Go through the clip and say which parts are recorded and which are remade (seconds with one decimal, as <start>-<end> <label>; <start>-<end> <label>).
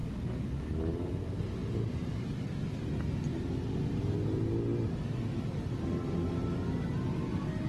0.0-7.7 recorded